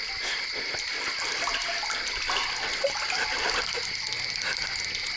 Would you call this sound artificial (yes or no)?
no